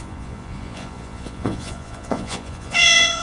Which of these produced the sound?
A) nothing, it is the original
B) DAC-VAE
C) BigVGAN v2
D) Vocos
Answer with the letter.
D